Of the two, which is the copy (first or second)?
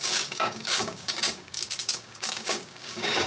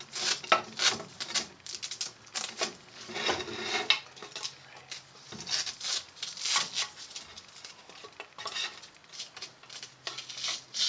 first